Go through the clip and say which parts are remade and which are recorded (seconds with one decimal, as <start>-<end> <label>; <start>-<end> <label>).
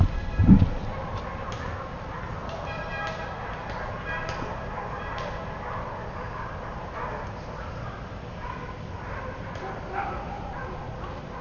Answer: 0.0-11.4 recorded